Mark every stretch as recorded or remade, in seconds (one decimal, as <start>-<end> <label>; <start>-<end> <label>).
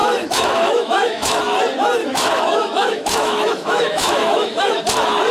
0.0-1.4 remade; 1.4-2.0 recorded; 2.0-4.8 remade; 4.8-5.3 recorded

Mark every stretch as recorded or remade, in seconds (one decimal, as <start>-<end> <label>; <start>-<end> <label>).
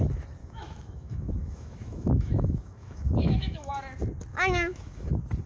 0.0-0.4 recorded; 0.4-3.7 remade; 3.7-4.3 recorded; 4.3-5.1 remade; 5.1-5.5 recorded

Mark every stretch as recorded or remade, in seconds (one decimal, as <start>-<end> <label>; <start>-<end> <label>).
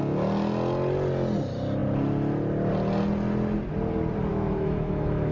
0.0-4.3 recorded; 4.3-5.3 remade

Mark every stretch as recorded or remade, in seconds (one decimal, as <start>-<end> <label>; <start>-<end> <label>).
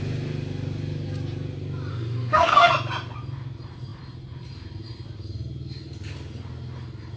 0.0-1.9 recorded; 1.9-2.7 remade; 2.7-7.2 recorded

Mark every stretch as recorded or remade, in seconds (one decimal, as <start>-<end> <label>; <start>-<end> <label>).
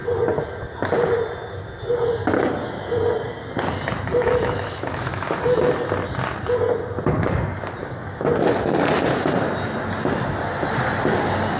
0.0-4.1 recorded; 4.1-5.6 remade; 5.6-7.8 recorded; 7.8-8.3 remade; 8.3-11.6 recorded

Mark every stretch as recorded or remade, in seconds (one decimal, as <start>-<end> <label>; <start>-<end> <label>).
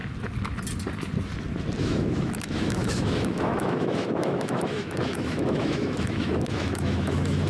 0.0-1.8 recorded; 1.8-7.5 remade